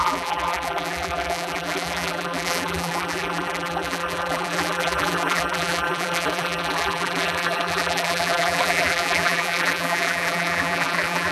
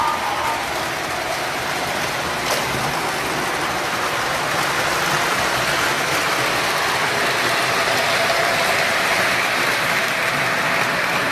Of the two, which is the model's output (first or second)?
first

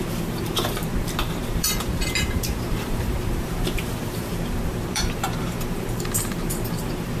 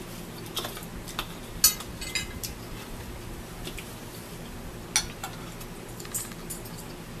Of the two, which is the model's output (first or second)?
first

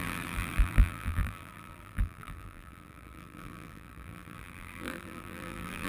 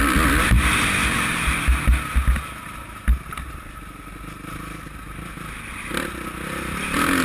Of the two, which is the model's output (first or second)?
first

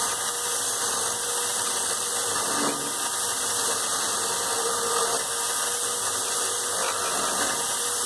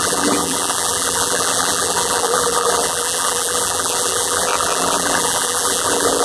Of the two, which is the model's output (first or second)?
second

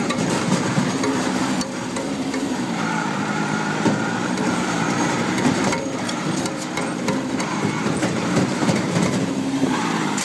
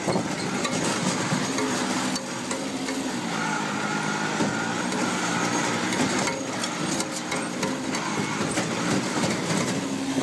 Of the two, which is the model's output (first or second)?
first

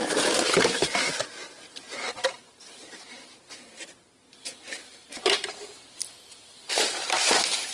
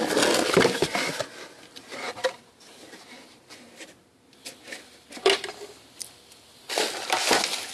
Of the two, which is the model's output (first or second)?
first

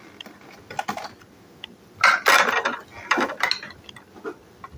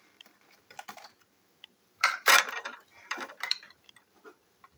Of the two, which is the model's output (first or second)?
second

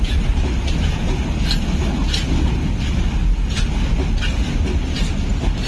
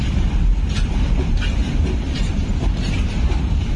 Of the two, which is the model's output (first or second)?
second